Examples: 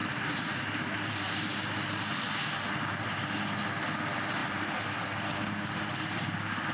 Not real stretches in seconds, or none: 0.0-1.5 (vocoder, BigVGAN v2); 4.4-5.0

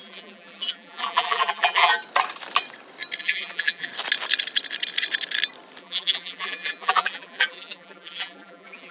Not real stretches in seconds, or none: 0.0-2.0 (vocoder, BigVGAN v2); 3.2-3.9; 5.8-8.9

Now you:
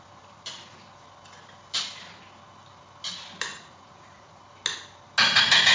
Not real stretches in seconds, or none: 3.5-4.4 (vocoder, Vocos)